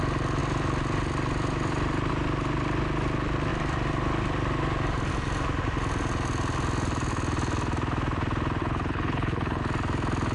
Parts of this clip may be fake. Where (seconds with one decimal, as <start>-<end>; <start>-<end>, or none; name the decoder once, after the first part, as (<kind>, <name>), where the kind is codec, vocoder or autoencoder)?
8.6-9.6 (codec, HILCodec)

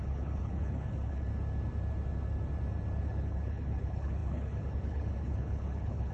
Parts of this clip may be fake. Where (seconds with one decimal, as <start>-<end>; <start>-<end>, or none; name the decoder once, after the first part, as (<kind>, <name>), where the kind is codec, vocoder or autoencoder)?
0.0-1.3 (codec, HILCodec); 3.0-6.1